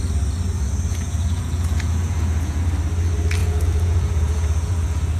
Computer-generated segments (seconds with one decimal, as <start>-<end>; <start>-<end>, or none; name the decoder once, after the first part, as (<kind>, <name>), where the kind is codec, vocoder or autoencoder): 0.9-2.6 (vocoder, Vocos); 3.4-5.2